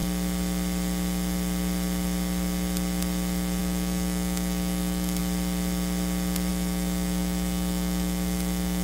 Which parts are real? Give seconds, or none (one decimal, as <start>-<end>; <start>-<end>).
0.0-3.6; 5.2-6.5